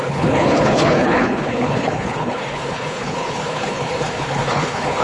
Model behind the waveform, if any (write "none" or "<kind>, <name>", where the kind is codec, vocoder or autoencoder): codec, HILCodec